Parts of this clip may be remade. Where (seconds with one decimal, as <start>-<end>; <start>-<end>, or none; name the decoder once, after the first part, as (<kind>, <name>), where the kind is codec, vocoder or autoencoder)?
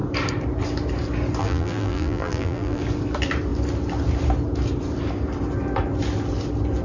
1.4-2.8 (vocoder, BigVGAN v2)